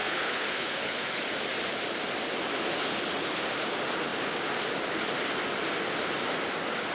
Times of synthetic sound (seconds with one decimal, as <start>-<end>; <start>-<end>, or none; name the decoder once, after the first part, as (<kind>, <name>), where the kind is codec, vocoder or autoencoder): 0.0-1.2 (codec, HILCodec)